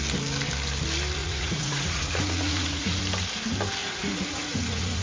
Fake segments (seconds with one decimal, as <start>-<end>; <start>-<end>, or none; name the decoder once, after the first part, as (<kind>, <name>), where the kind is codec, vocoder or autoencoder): 1.2-3.0 (vocoder, Vocos); 3.8-5.0

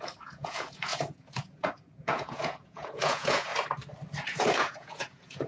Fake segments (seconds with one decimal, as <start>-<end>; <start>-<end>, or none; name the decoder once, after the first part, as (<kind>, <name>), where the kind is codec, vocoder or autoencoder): 0.0-3.5 (vocoder, Vocos); 4.4-5.5

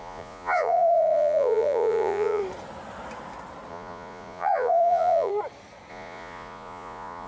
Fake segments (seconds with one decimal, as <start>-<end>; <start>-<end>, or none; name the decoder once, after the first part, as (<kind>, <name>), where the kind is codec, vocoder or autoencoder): 0.0-2.4 (vocoder, Vocos); 3.7-5.3; 5.9-7.3

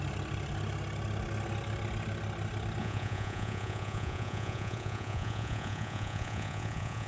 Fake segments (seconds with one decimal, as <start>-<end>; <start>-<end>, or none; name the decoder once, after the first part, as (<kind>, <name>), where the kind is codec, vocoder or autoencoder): 2.8-7.1 (vocoder, Vocos)

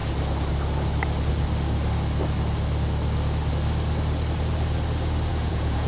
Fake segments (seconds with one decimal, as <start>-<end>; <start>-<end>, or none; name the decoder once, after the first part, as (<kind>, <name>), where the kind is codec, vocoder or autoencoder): 5.3-5.9 (vocoder, Vocos)

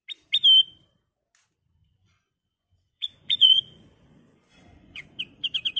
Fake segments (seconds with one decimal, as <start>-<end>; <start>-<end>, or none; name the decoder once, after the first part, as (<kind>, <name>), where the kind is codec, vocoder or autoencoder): 1.8-5.2 (vocoder, Vocos)

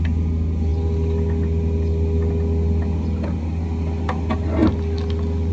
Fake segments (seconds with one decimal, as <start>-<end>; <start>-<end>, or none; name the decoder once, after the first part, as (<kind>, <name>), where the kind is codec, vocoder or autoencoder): none

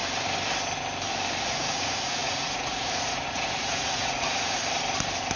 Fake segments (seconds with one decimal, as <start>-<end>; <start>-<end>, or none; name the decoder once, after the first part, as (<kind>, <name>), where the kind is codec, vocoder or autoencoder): 1.4-4.6 (vocoder, Vocos)